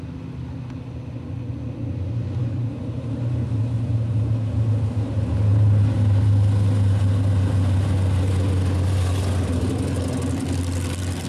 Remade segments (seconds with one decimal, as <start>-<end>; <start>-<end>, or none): 2.4-4.2

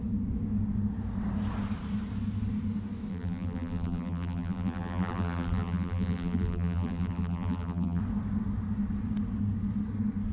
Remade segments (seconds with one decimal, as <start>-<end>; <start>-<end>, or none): 3.1-8.0